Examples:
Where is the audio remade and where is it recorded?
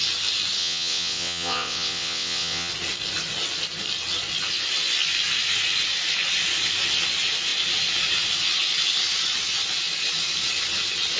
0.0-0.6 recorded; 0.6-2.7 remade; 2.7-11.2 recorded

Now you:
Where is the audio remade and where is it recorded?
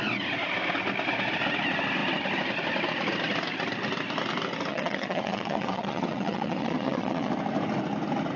0.0-4.7 recorded; 4.7-7.3 remade; 7.3-8.4 recorded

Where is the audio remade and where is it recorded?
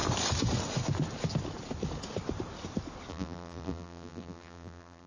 0.0-3.1 recorded; 3.1-5.1 remade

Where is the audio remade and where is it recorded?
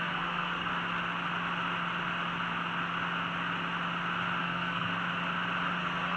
0.0-0.7 remade; 0.7-4.4 recorded; 4.4-4.9 remade; 4.9-5.8 recorded; 5.8-6.2 remade